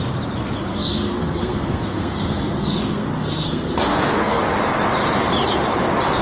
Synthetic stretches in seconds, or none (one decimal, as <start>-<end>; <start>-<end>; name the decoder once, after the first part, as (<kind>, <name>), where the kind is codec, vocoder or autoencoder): 0.7-4.4 (codec, SNAC)